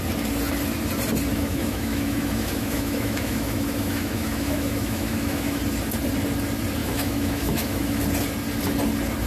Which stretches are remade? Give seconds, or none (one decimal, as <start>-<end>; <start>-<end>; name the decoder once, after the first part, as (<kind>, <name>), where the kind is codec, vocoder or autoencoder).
1.3-5.6 (autoencoder, DAC-VAE); 6.8-8.0

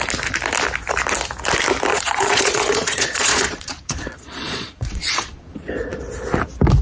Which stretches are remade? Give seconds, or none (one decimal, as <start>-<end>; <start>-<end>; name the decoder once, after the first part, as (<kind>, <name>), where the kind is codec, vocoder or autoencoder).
1.9-6.0 (vocoder, Vocos)

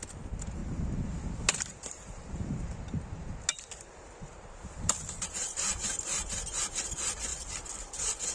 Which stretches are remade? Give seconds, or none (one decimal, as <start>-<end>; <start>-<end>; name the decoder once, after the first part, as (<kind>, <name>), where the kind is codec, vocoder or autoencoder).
none

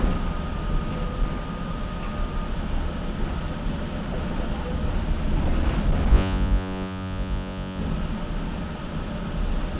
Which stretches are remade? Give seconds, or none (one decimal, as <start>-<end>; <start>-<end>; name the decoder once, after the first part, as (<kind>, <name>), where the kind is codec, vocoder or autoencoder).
6.1-7.8 (vocoder, Vocos)

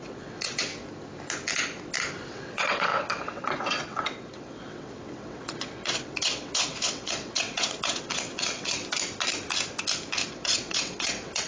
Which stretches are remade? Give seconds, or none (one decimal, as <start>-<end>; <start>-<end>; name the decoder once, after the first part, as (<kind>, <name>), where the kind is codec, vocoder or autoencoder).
0.0-0.7 (vocoder, WaveNeXt); 2.3-8.8; 10.3-11.5

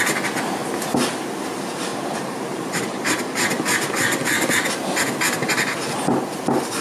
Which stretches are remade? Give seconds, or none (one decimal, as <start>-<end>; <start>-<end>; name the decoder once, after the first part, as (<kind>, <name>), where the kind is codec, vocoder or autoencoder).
1.9-3.2 (vocoder, BigVGAN v2)

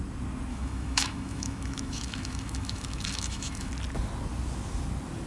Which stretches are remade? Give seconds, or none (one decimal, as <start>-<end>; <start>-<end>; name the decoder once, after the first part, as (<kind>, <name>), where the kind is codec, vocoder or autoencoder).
0.5-3.7 (autoencoder, DAC-VAE)